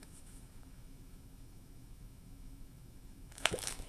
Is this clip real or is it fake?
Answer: fake